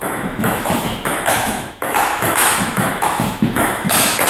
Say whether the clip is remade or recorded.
remade